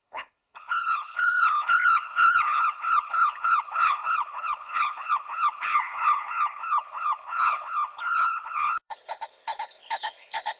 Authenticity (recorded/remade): remade